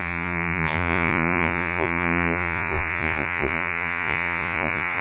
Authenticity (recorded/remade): remade